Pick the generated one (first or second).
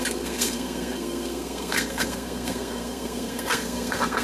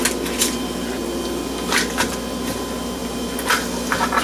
first